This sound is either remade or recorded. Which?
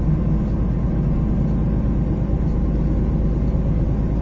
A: recorded